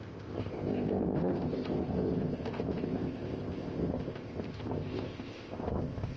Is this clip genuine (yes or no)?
no